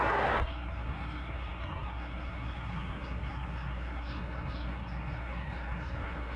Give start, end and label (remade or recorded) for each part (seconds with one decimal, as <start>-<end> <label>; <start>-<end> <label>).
0.0-6.4 remade